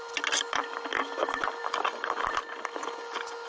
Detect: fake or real real